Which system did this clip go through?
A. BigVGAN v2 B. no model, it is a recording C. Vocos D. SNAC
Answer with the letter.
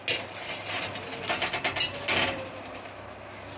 B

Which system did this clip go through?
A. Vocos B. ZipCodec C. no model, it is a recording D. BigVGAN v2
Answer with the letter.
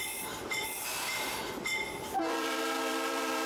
D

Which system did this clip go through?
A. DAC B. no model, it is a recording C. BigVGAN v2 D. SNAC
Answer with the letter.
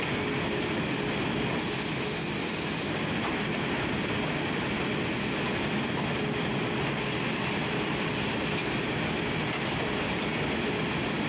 B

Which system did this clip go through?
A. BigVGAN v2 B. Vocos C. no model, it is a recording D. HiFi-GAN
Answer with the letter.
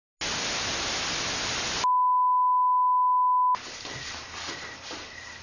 C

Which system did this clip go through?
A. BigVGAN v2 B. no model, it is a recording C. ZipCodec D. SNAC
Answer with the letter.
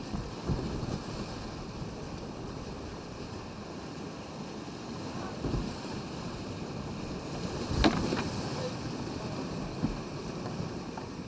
A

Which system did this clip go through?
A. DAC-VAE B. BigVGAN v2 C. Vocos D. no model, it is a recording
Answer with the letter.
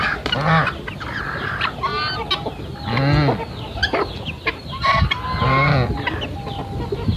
D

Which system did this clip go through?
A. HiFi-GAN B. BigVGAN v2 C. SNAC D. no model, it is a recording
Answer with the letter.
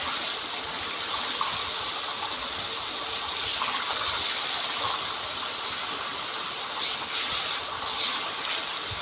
D